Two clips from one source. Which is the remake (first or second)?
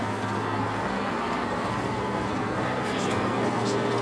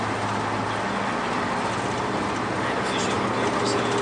first